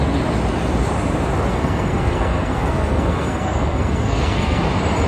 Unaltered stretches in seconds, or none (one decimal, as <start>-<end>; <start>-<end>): 0.0-1.5; 4.6-5.1